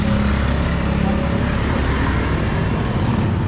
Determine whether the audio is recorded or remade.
recorded